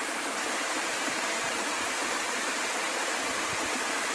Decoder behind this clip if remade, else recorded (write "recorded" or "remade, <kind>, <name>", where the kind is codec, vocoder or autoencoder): recorded